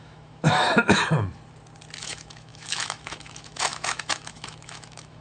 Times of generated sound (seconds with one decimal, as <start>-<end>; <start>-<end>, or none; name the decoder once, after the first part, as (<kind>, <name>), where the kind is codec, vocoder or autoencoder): 0.0-1.0 (autoencoder, DAC-VAE); 2.0-5.2